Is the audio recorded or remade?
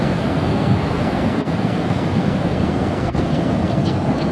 remade